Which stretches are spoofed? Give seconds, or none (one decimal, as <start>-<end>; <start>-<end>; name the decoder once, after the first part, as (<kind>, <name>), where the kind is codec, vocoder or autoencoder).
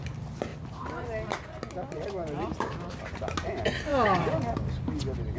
none